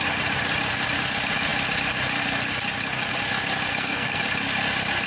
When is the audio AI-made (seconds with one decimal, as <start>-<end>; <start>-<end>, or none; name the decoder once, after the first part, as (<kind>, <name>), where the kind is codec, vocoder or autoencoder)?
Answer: 3.7-4.2 (codec, SNAC)